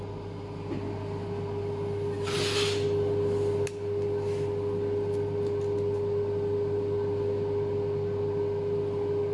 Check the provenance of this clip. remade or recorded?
recorded